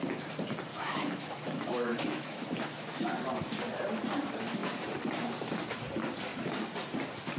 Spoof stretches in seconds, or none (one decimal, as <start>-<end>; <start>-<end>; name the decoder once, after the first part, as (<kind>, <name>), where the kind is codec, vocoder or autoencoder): 0.7-2.9 (autoencoder, DAC-VAE)